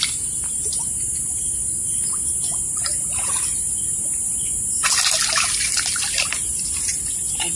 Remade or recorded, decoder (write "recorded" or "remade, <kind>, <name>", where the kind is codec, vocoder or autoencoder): recorded